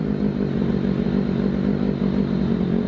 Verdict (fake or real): real